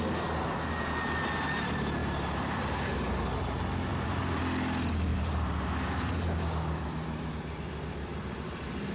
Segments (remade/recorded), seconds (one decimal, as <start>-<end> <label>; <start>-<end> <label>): 0.0-3.9 recorded; 3.9-4.4 remade; 4.4-5.1 recorded; 5.1-6.1 remade; 6.1-8.9 recorded